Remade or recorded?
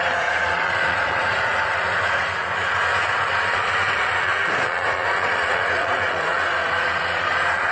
remade